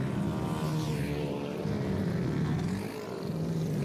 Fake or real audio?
real